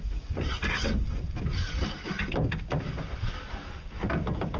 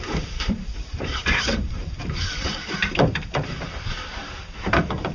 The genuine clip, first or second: first